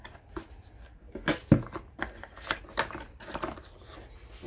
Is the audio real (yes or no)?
yes